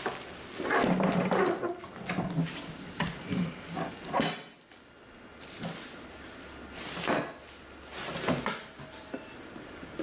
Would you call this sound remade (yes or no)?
no